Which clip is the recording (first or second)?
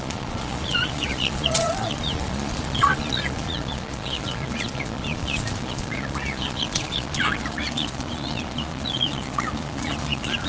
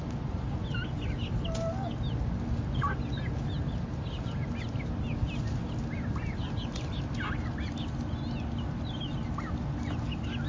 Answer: second